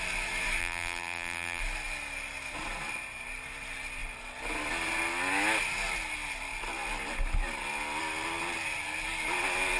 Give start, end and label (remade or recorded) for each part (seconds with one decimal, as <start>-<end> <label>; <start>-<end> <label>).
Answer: 0.0-0.6 recorded; 0.6-1.6 remade; 1.6-9.8 recorded